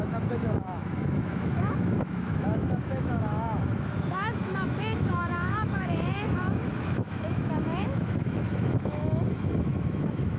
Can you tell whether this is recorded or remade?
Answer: remade